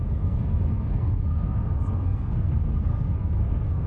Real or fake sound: fake